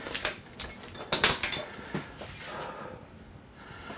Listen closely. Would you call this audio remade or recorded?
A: recorded